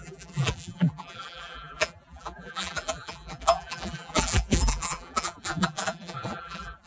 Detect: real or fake fake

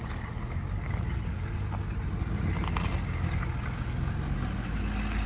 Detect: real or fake real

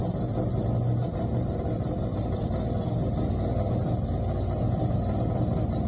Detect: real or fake real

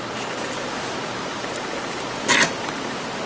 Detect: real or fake real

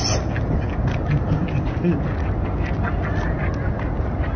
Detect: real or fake real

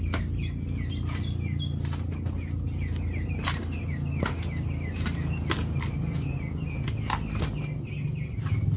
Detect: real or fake real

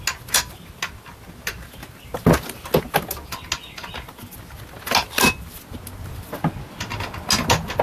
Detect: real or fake real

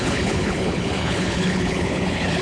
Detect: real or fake fake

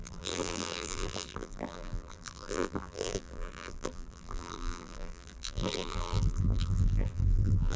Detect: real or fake fake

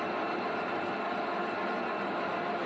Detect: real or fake real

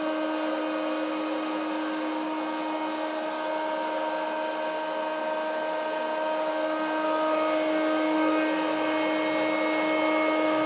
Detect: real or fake real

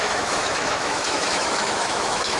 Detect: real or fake fake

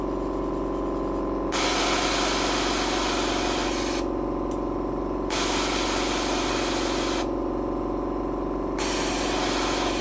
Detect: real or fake real